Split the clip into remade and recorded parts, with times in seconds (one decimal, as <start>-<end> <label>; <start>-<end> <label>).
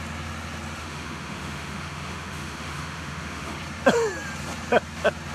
0.0-0.8 recorded; 0.8-3.6 remade; 3.6-5.3 recorded